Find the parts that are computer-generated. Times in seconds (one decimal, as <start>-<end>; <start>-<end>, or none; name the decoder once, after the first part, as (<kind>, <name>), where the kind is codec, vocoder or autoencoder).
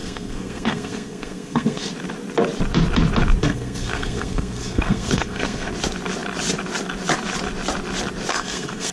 0.0-1.9 (codec, SNAC); 3.4-5.7; 8.3-8.9